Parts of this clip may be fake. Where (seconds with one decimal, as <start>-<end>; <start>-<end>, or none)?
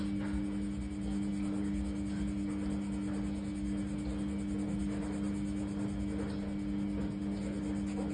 none